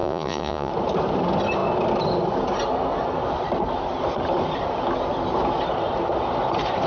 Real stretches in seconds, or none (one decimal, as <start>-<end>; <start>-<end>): 0.7-6.9